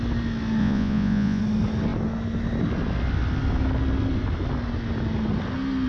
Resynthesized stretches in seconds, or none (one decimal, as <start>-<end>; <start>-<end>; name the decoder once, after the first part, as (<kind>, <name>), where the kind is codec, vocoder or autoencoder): 0.6-1.4 (vocoder, Vocos)